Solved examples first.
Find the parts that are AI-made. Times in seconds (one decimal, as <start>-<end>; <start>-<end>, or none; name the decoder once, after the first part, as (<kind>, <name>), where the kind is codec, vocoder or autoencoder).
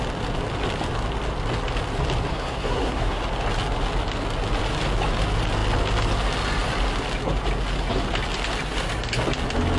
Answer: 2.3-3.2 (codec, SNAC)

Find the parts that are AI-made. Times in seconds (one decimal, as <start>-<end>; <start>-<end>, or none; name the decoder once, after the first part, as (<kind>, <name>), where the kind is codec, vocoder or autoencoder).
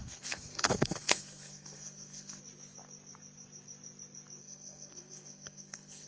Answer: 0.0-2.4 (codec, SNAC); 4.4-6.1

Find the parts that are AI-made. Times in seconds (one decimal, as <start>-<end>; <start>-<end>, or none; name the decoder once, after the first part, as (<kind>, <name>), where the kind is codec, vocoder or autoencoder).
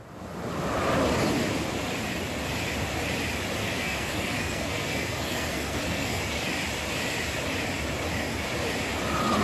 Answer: 3.6-6.2 (codec, SNAC)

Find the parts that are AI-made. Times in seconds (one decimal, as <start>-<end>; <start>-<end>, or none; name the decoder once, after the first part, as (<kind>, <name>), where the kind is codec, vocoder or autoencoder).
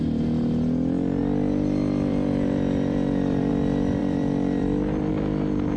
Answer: 1.2-3.5 (vocoder, BigVGAN v2); 4.0-5.1